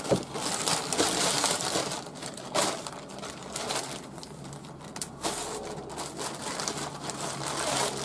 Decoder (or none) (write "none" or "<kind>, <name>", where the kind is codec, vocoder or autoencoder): none